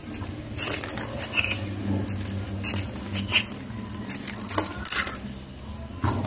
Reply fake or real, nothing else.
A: real